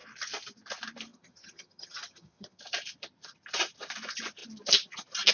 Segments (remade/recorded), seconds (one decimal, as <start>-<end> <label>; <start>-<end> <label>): 0.0-1.1 recorded; 1.1-2.6 remade; 2.6-5.3 recorded